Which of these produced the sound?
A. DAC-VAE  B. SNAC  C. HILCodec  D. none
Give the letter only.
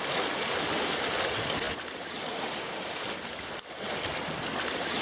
D